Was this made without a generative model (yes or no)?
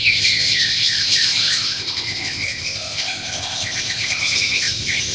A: no